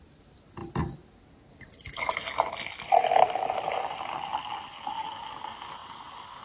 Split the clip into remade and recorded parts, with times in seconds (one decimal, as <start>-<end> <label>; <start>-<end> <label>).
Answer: 0.0-6.4 recorded